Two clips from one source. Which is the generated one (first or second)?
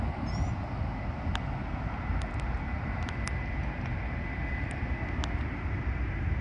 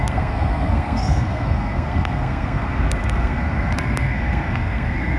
second